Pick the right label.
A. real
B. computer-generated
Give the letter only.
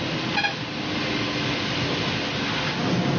A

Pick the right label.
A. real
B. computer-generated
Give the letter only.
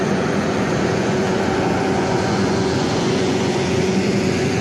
B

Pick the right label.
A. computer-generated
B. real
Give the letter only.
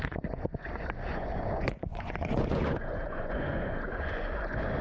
A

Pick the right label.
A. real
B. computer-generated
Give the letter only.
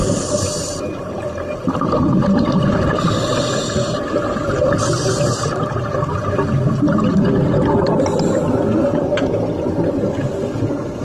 A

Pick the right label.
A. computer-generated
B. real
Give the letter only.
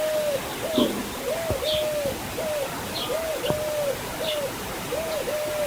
B